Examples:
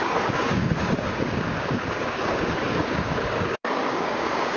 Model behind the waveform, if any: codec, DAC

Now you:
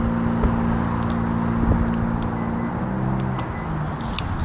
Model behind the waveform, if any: none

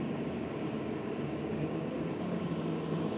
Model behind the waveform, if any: codec, DAC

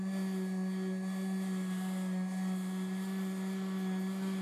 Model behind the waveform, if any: none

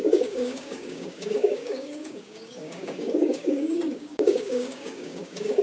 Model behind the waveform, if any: codec, DAC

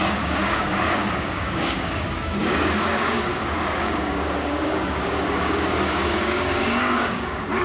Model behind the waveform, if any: codec, DAC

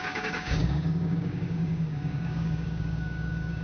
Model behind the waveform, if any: codec, DAC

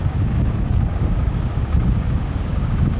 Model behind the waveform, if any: codec, DAC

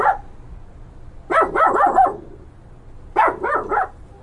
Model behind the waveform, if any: none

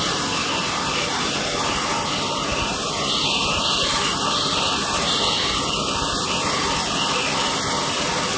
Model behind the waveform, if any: none